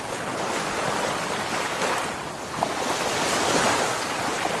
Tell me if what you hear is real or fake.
real